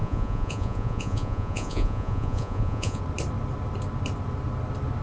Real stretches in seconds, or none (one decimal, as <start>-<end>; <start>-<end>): 3.0-5.0